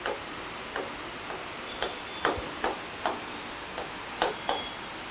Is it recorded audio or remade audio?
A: recorded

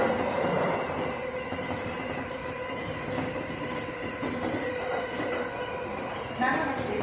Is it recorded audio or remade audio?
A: recorded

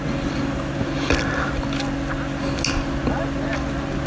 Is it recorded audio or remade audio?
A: recorded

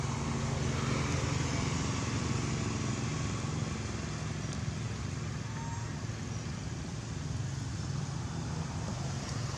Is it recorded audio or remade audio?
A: recorded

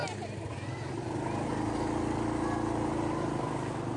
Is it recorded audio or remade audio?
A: recorded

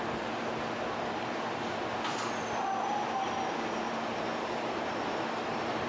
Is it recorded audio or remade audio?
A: recorded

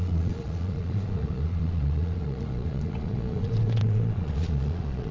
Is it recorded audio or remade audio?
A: remade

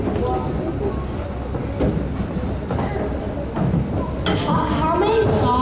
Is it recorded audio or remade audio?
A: recorded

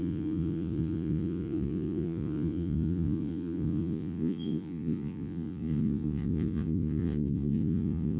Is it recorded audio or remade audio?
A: remade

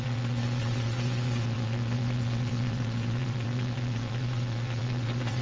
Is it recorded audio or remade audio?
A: remade